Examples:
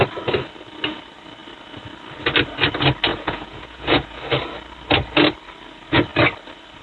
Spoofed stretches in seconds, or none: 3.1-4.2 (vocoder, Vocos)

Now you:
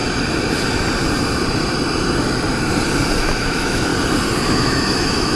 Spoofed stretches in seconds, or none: 3.2-3.9 (autoencoder, DAC-VAE); 4.5-5.4

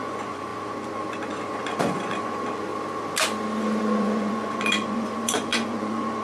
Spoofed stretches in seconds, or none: 0.0-2.7 (vocoder, Vocos); 3.8-6.2

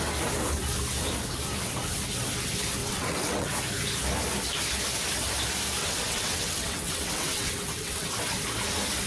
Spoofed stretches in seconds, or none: 2.8-3.5 (vocoder, WaveNeXt); 5.8-8.1

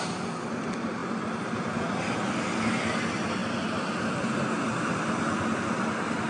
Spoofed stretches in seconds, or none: none

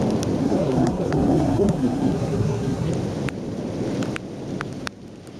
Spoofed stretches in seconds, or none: 0.4-2.9 (codec, SNAC)

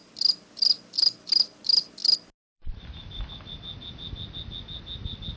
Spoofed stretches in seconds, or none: none

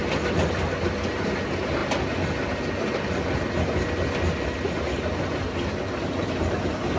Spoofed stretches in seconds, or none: none